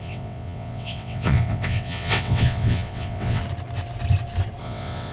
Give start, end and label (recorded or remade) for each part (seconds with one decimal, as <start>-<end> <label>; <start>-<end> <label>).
0.0-3.4 remade; 3.4-4.6 recorded; 4.6-5.1 remade